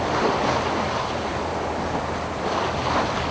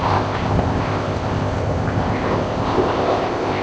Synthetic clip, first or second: second